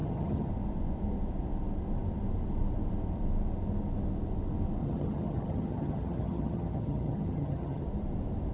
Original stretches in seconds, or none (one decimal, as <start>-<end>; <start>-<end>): 0.5-4.8; 7.8-8.5